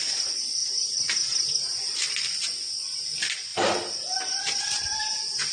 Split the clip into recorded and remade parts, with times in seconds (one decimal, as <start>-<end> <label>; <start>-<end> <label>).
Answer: 0.0-0.6 recorded; 0.6-2.1 remade; 2.1-3.5 recorded; 3.5-5.5 remade